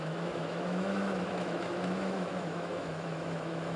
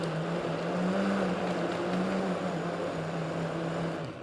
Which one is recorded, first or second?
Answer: second